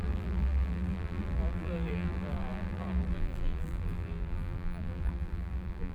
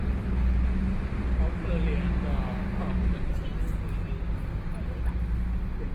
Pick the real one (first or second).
second